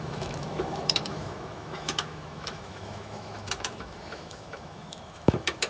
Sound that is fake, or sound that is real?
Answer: fake